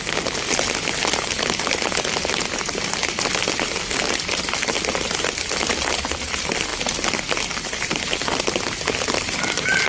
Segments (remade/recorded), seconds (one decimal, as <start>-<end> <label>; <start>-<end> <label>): 0.0-9.9 recorded

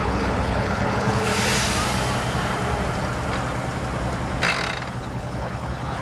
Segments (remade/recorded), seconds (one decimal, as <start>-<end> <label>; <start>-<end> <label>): 0.0-1.3 remade; 1.3-4.9 recorded; 4.9-6.0 remade